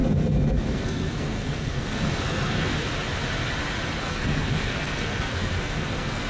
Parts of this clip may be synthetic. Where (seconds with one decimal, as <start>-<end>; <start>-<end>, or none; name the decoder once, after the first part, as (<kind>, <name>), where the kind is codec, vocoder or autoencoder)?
0.0-2.7 (codec, SNAC); 4.0-6.3